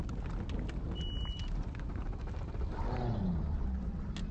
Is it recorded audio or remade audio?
recorded